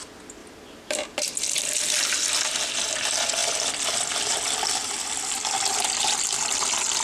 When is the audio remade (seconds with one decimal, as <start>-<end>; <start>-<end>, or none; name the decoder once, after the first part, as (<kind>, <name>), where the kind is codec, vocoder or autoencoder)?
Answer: 0.4-2.7 (vocoder, BigVGAN v2); 3.4-5.3